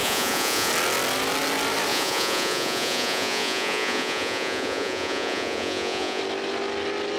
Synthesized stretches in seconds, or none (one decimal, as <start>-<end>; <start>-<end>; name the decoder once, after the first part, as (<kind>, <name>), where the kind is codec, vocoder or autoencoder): 0.0-0.7 (vocoder, Vocos); 1.9-6.2